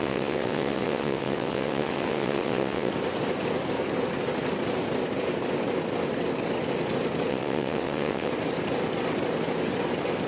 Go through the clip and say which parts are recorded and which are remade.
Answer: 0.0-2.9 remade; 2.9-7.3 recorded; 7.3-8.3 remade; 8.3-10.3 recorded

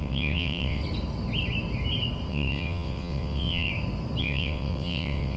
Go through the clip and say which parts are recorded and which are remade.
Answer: 0.0-0.8 remade; 0.8-2.3 recorded; 2.3-3.7 remade; 3.7-4.2 recorded; 4.2-5.4 remade

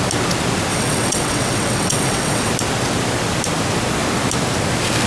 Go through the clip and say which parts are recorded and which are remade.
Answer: 0.0-0.7 recorded; 0.7-2.5 remade; 2.5-5.1 recorded

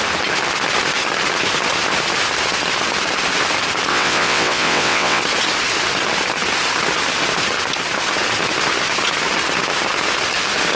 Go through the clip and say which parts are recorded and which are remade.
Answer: 0.0-3.9 recorded; 3.9-5.2 remade; 5.2-10.8 recorded

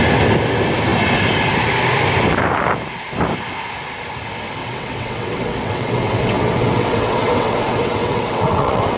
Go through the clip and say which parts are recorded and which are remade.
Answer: 0.0-4.6 recorded; 4.6-9.0 remade